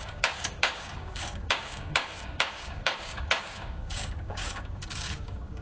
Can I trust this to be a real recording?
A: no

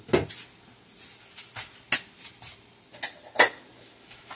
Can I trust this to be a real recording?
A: yes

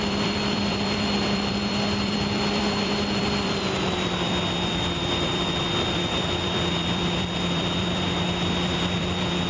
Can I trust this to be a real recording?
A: no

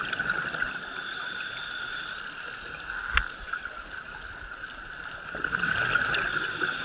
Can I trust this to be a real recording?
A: yes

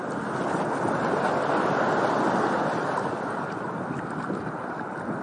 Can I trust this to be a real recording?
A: yes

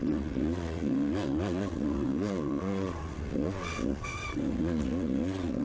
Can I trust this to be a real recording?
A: no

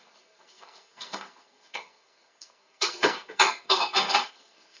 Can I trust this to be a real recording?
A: no